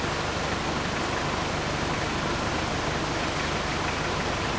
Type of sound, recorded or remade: recorded